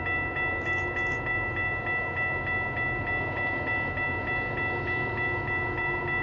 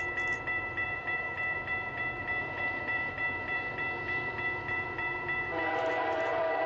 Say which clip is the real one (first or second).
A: first